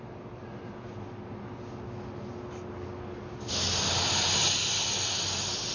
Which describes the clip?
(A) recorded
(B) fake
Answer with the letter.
A